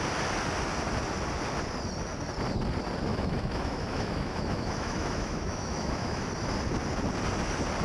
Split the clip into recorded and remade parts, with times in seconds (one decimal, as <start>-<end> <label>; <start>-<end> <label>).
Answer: 0.0-3.1 recorded; 3.1-6.3 remade; 6.3-7.8 recorded

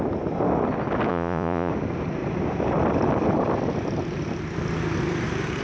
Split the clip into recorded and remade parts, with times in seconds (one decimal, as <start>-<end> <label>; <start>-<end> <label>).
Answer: 0.0-1.1 recorded; 1.1-1.7 remade; 1.7-5.6 recorded

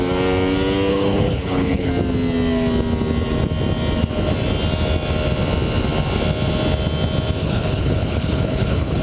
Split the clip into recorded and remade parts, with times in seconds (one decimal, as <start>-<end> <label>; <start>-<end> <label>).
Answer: 0.0-0.9 recorded; 0.9-1.9 remade; 1.9-7.4 recorded; 7.4-9.0 remade

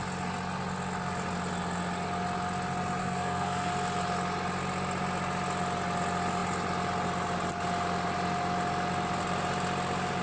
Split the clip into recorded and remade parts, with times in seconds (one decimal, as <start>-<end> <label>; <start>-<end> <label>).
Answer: 0.0-3.0 recorded; 3.0-3.7 remade; 3.7-10.2 recorded

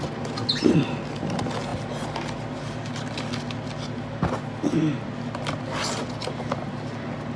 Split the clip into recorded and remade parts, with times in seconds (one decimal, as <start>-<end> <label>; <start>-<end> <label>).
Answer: 0.0-7.4 recorded